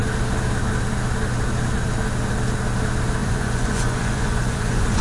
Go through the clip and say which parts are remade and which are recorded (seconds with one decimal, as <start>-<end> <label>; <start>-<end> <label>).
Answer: 0.0-3.2 recorded; 3.2-5.0 remade